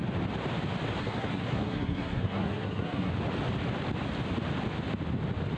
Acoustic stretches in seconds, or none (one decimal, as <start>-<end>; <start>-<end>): 0.0-1.0; 3.1-5.6